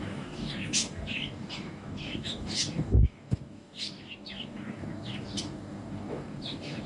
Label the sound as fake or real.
fake